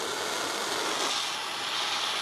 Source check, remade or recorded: recorded